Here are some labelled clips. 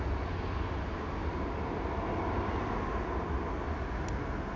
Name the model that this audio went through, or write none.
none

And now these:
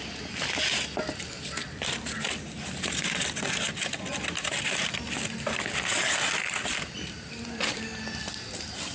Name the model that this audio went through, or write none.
none